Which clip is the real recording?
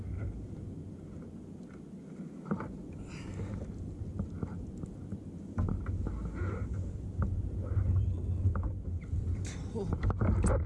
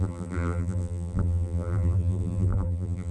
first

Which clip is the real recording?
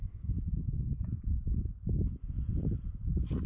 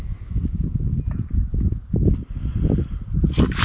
second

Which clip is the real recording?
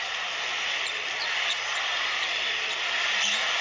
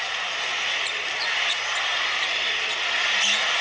second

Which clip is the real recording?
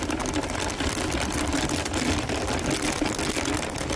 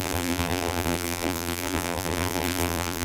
first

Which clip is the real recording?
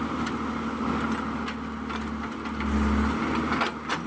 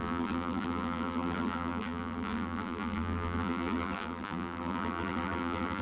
first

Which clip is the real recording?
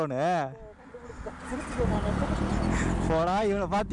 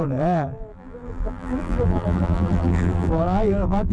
first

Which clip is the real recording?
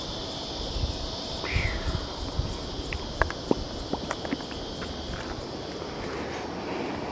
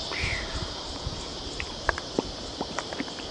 first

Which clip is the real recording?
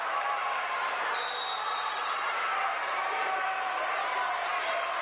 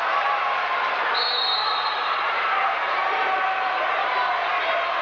first